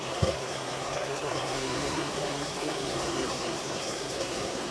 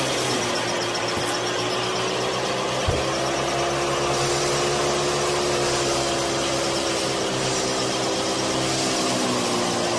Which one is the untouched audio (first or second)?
second